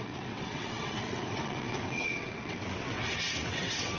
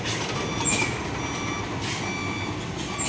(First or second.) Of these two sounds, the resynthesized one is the first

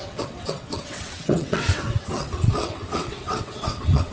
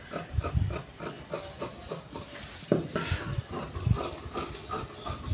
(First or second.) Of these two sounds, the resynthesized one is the first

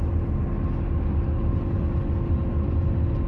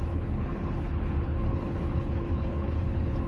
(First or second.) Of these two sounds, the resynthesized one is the second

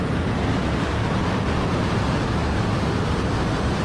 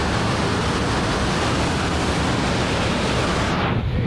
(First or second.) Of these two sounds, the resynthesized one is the first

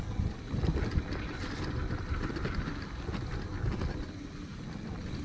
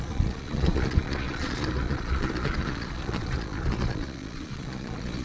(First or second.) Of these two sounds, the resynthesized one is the second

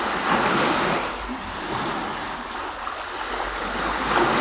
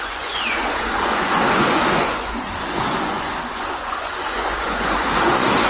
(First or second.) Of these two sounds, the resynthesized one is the second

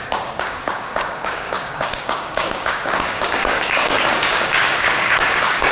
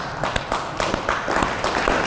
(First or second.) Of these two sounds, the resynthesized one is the first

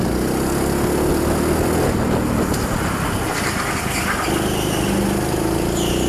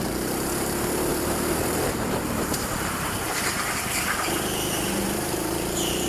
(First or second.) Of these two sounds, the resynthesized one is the second